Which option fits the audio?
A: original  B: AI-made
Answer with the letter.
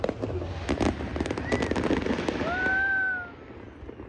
A